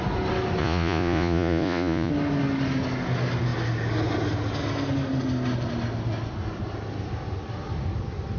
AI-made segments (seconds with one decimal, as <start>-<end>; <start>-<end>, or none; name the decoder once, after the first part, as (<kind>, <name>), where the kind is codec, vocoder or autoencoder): 0.6-2.1 (vocoder, Vocos)